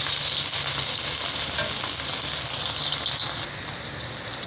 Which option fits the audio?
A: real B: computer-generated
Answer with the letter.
A